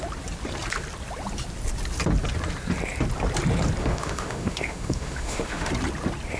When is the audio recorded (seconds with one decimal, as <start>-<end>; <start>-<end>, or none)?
0.0-3.8; 5.7-6.4